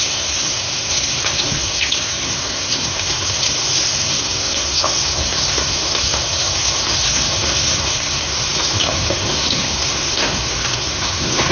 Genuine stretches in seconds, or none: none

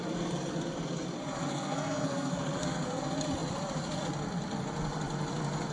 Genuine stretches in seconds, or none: 0.0-1.5; 3.0-5.7

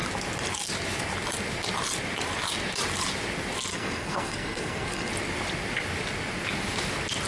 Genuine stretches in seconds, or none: 0.0-3.7; 5.1-7.3

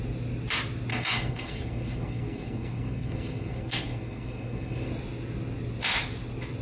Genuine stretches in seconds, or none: 0.0-0.9; 4.9-6.6

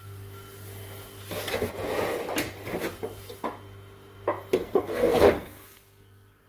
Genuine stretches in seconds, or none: 0.0-4.6

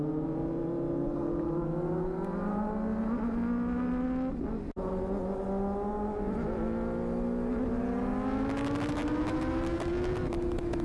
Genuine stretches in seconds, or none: 0.0-10.8